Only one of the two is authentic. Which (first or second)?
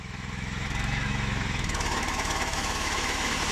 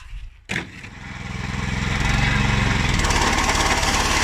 second